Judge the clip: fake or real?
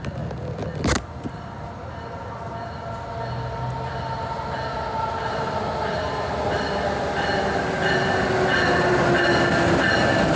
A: real